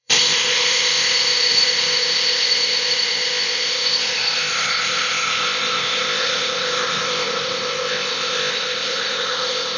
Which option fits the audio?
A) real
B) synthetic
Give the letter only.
B